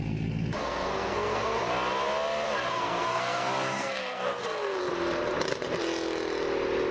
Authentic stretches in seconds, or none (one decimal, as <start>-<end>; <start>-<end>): 1.6-2.7; 4.8-6.9